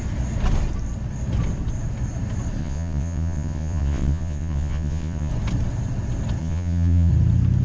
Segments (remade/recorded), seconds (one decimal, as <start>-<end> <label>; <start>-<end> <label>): 0.0-2.6 recorded; 2.6-5.3 remade; 5.3-6.4 recorded; 6.4-7.1 remade; 7.1-7.6 recorded

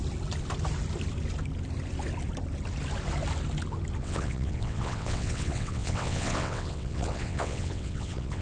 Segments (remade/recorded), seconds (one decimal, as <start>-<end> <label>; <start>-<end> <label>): 0.0-4.0 recorded; 4.0-8.4 remade